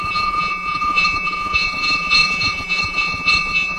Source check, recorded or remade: remade